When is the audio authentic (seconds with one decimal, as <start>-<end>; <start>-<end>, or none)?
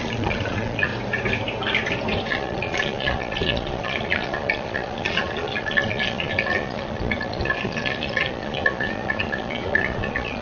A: 0.9-2.3